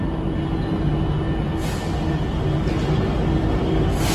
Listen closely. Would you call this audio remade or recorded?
recorded